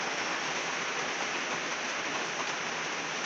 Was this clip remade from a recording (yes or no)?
no